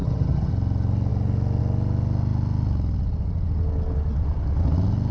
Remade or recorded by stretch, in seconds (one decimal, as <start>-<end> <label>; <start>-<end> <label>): 0.0-0.5 remade; 0.5-5.1 recorded